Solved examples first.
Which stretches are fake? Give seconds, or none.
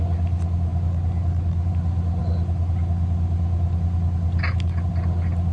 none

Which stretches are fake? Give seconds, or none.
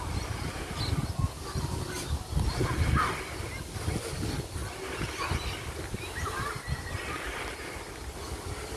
none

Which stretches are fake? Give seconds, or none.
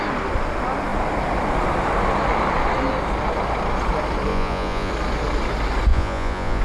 4.3-4.9 (vocoder, Vocos); 5.9-6.6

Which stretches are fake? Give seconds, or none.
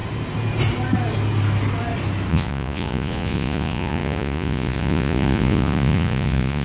2.3-6.6 (vocoder, Vocos)